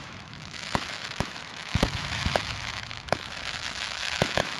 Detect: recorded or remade remade